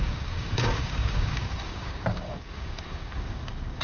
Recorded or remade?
remade